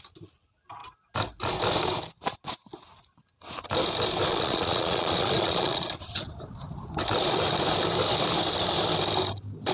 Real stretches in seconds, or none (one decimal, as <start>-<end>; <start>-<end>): 0.0-4.3; 5.9-9.7